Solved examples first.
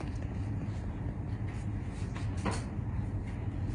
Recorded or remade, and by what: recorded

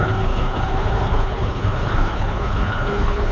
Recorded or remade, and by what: remade, codec, HILCodec